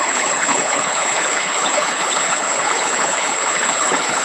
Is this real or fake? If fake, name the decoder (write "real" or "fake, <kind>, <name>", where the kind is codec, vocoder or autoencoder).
fake, codec, HILCodec